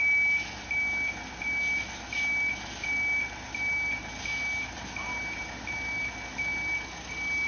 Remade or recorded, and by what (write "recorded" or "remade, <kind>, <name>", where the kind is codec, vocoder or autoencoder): recorded